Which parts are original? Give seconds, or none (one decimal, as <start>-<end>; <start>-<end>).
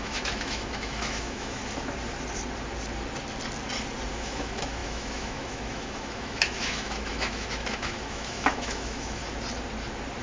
1.6-4.1; 9.2-10.2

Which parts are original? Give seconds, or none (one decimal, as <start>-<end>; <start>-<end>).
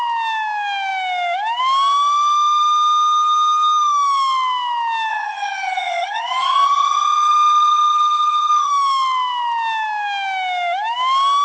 0.0-5.1; 8.7-11.4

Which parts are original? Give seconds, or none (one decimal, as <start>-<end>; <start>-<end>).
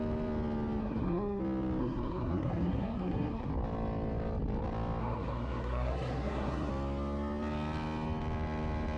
0.0-0.8; 1.4-1.8; 3.5-5.0; 6.7-9.0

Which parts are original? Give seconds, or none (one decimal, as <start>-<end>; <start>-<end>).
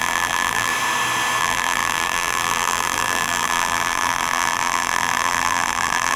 0.7-1.4